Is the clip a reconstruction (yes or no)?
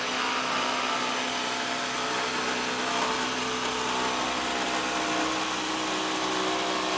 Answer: no